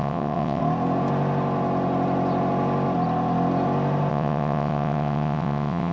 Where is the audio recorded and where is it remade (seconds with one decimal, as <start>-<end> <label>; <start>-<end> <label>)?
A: 0.0-0.6 remade; 0.6-4.1 recorded; 4.1-5.9 remade